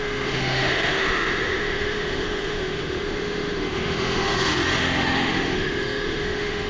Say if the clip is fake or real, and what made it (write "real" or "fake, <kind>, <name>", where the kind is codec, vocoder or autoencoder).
fake, autoencoder, DAC-VAE